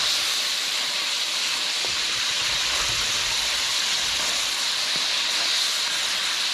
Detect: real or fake real